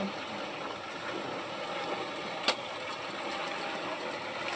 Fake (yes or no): no